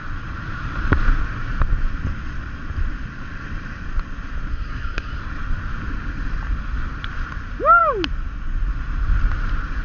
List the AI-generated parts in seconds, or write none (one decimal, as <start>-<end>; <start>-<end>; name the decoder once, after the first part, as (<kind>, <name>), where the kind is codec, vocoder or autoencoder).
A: 4.5-5.2 (codec, SNAC)

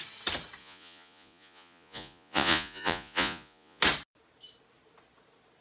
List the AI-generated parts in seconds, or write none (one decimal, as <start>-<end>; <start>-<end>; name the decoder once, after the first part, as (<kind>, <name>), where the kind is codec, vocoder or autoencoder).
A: 0.6-3.8 (vocoder, Vocos)

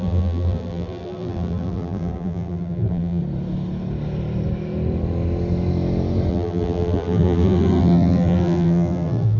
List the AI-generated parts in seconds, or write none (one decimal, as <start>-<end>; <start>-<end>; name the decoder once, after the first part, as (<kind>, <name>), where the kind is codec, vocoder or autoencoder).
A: 0.0-3.2 (vocoder, BigVGAN v2); 6.3-9.4

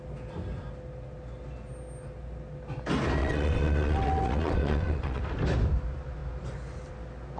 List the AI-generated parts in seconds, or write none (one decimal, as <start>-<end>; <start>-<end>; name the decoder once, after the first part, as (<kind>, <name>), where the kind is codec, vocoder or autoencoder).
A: 3.2-5.2 (vocoder, WaveNeXt)

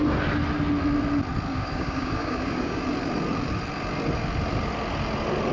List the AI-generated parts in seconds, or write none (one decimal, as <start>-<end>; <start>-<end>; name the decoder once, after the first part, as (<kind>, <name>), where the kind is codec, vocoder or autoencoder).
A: 1.5-2.8 (codec, DAC)

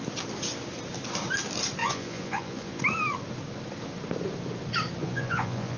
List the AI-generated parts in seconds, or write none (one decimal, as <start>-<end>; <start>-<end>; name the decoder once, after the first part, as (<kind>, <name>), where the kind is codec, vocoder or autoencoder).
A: 1.8-2.8 (vocoder, Vocos); 5.0-5.8